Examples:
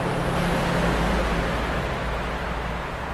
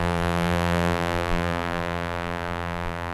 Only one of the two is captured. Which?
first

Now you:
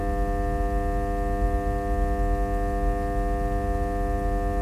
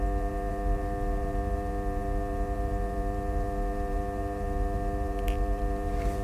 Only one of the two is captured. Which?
first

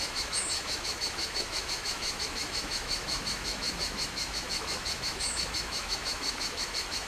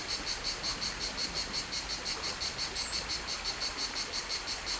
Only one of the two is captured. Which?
second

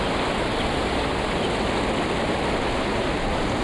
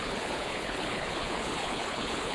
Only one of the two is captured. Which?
first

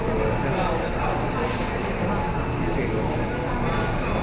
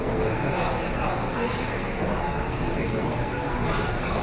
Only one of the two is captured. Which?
first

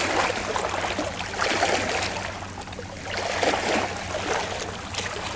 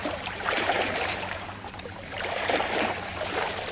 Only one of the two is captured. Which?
first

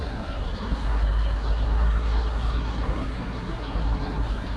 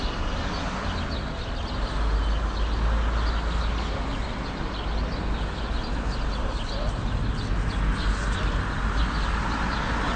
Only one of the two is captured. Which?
second